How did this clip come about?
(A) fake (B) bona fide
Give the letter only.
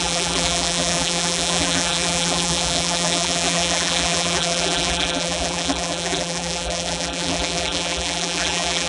A